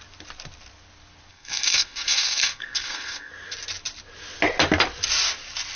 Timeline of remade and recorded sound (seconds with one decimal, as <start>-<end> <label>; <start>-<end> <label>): 0.0-1.3 recorded; 1.3-3.3 remade; 3.3-5.8 recorded